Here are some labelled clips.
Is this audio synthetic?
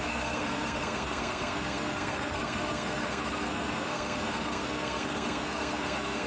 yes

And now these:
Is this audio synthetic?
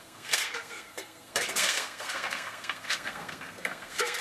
yes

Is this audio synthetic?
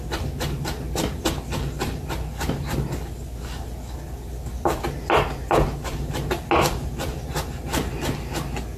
no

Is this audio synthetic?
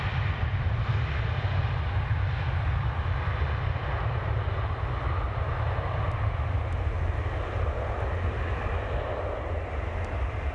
no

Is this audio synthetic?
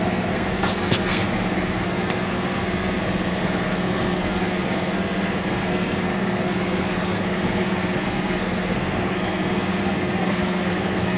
yes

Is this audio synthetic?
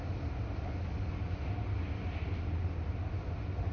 no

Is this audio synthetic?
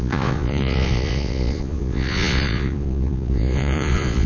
yes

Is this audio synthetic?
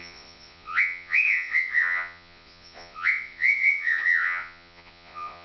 yes